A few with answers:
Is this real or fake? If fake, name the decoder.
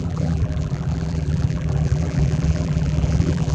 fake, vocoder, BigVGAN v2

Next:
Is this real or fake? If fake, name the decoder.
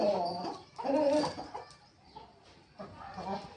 real